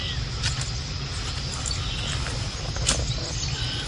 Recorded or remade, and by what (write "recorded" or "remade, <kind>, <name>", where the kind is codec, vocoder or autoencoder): recorded